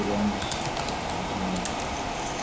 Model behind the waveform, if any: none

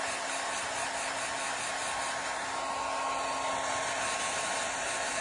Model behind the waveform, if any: none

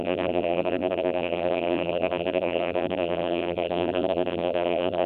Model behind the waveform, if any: vocoder, BigVGAN v2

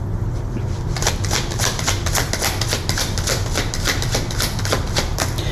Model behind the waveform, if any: none